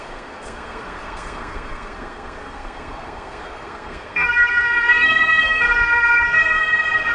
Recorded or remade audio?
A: remade